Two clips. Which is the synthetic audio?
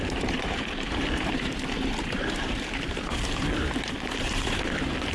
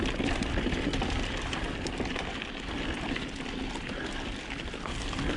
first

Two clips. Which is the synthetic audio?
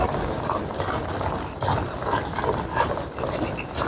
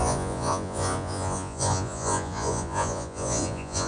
second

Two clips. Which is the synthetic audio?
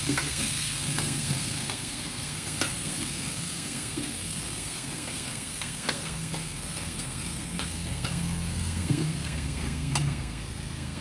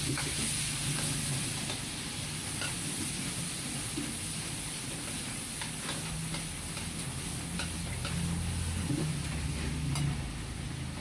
first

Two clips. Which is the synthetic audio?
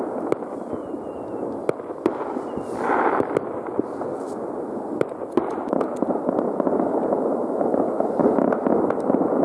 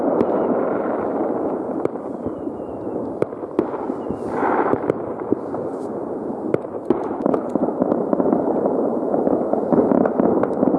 second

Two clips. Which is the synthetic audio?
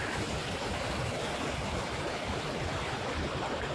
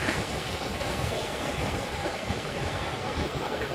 second